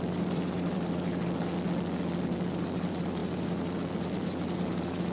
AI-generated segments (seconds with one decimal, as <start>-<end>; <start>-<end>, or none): 0.0-1.5; 2.5-5.1